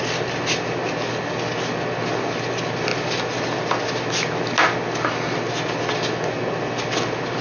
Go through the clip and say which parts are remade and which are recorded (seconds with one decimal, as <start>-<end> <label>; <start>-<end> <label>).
0.0-7.4 recorded